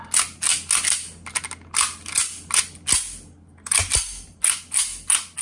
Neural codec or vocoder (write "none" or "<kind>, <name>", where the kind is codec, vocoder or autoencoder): none